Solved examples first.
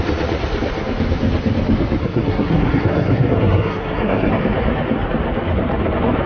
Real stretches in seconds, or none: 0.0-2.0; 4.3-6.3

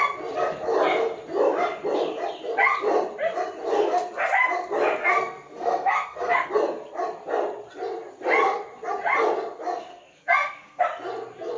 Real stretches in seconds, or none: 0.0-5.0; 6.5-9.9; 10.8-11.6

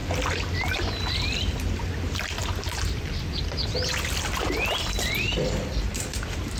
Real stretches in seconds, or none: 0.0-2.4

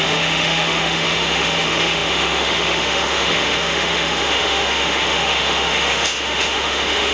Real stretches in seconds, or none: none